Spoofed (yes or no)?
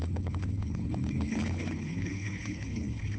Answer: yes